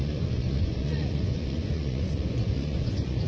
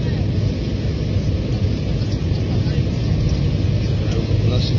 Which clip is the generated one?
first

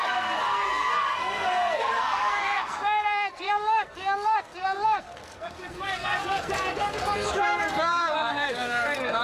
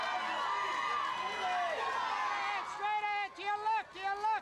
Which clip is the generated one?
first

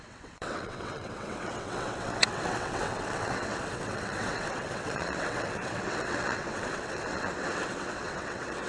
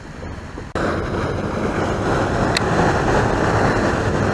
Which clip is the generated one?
first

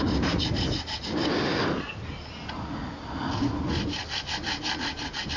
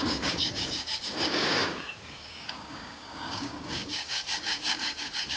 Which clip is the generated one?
second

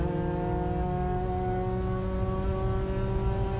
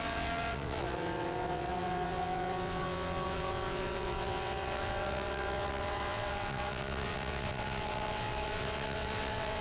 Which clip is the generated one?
second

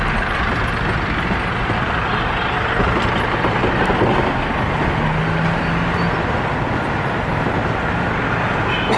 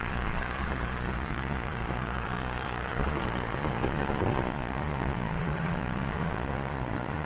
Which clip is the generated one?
second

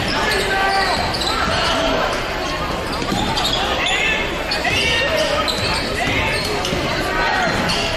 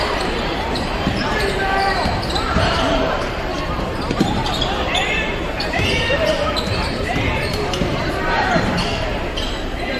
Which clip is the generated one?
second